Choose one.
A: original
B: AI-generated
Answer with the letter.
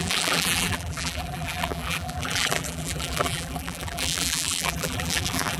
B